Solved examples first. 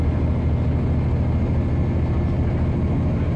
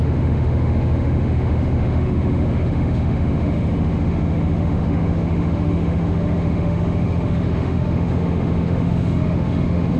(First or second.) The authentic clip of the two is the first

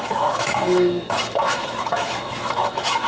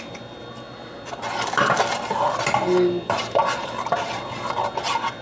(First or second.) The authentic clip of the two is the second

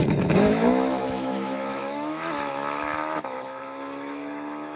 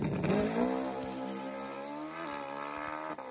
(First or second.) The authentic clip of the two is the second